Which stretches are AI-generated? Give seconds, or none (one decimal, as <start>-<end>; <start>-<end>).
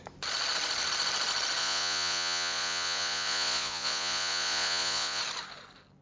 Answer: 1.6-5.2